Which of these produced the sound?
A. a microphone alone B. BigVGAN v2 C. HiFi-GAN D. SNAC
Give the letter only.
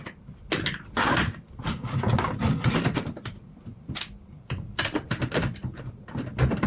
A